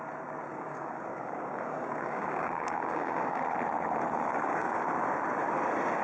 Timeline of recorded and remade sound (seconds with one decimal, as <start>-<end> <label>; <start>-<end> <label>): 0.0-0.5 recorded; 0.5-3.4 remade; 3.4-4.3 recorded; 4.3-4.8 remade; 4.8-6.0 recorded